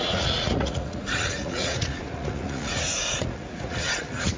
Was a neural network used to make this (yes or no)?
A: yes